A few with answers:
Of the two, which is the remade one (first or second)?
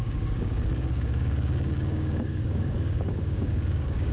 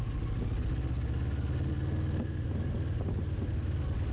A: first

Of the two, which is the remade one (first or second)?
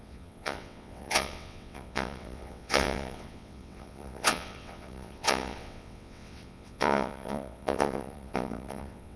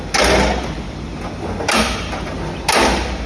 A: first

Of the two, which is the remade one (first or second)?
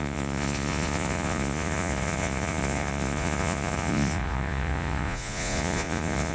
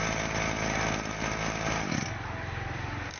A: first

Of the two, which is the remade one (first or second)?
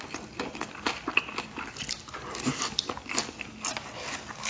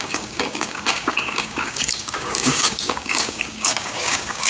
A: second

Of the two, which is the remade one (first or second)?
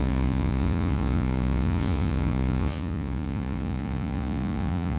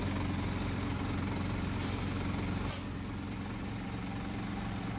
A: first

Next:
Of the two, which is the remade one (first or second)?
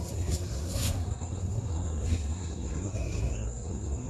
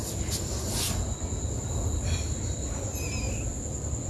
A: first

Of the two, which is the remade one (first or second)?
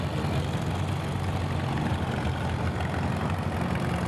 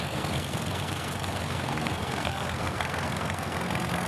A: second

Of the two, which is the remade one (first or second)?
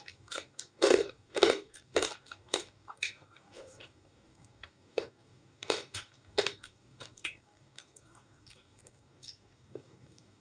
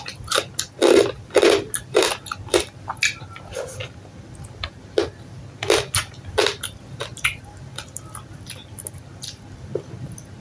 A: first